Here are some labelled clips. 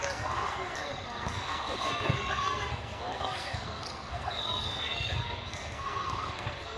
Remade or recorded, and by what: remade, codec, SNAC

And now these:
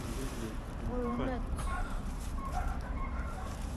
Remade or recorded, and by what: remade, vocoder, BigVGAN v2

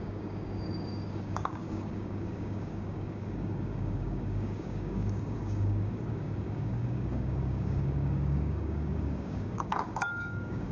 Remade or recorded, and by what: remade, codec, DAC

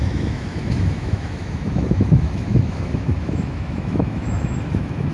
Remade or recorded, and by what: remade, autoencoder, DAC-VAE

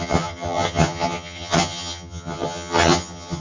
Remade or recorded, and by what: remade, vocoder, HiFi-GAN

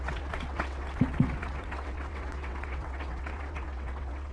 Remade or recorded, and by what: remade, vocoder, WaveNeXt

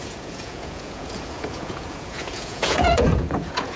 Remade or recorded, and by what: remade, vocoder, Vocos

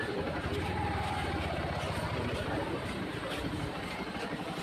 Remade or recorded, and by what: remade, vocoder, BigVGAN v2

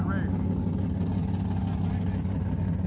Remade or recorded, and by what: recorded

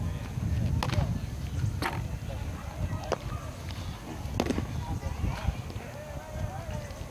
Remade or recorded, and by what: recorded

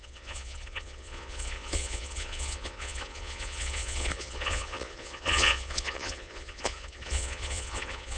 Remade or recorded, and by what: remade, vocoder, Vocos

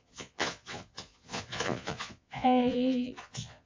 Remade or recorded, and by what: remade, vocoder, Vocos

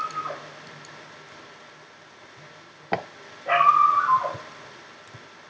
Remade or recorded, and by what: recorded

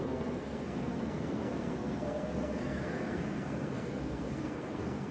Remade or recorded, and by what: remade, codec, SNAC